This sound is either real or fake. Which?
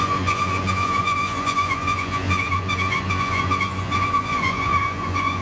fake